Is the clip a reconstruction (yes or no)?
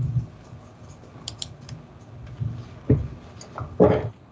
no